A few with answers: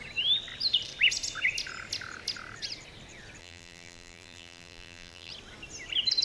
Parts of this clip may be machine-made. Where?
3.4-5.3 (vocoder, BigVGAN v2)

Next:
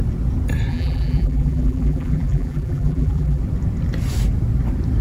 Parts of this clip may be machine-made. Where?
0.7-3.4 (vocoder, BigVGAN v2)

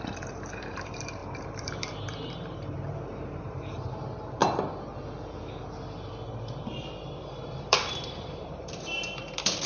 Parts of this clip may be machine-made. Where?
0.0-4.4 (vocoder, BigVGAN v2); 7.2-9.7

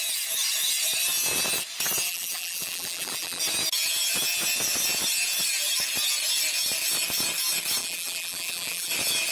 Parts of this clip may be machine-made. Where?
2.1-3.4 (vocoder, BigVGAN v2); 7.8-8.9